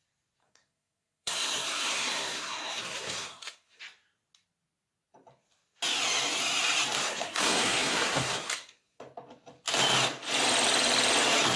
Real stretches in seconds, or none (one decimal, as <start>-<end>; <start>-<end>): 0.0-0.4; 3.8-7.0; 9.0-11.6